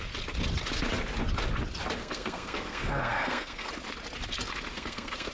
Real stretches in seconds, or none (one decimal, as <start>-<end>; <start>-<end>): 0.0-2.0; 3.7-4.7

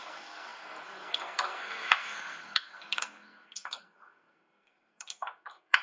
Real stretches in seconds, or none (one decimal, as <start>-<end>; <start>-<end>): none

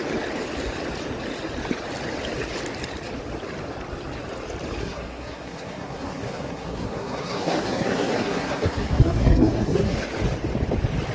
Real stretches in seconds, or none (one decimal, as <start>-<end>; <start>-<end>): 0.0-4.8; 10.0-11.1

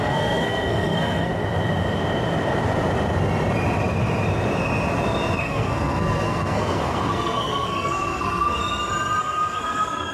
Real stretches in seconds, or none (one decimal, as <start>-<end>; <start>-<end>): 1.4-5.4; 8.6-9.2

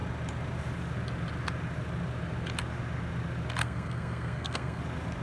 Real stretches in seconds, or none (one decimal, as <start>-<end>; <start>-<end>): 0.0-3.6; 4.8-5.2

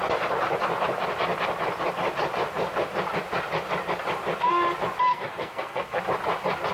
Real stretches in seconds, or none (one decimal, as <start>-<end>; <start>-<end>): 0.0-5.1; 6.0-6.7

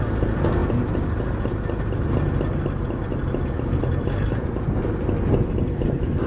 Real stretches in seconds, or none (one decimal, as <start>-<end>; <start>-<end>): 0.0-6.3